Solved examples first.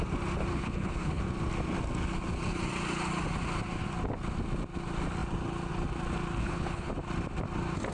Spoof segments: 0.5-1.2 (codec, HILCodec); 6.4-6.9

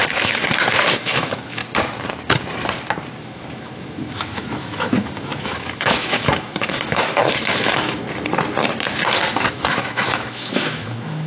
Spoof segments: 1.0-1.6 (autoencoder, DAC-VAE); 3.2-8.0; 9.5-11.3

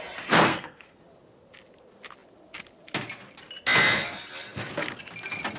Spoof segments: 0.5-1.0 (codec, SNAC)

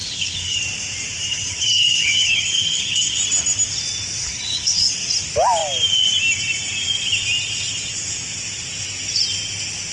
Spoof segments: 0.0-0.6 (codec, HILCodec); 1.3-3.2; 4.2-4.9

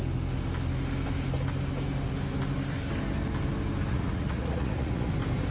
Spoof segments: 3.9-5.1 (vocoder, Vocos)

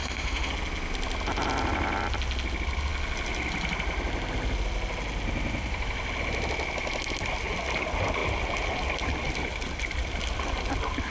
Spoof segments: 0.0-0.5 (autoencoder, DAC-VAE)

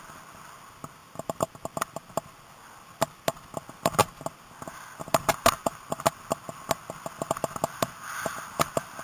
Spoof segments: 1.0-1.5 (vocoder, BigVGAN v2)

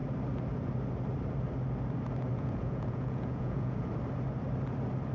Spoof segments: 2.3-3.9 (vocoder, Vocos)